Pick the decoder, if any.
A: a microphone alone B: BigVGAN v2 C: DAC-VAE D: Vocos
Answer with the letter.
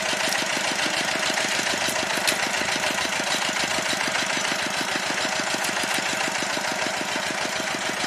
A